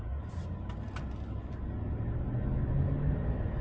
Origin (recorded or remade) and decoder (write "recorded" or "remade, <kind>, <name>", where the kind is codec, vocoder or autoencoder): recorded